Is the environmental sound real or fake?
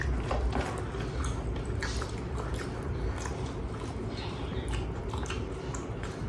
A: real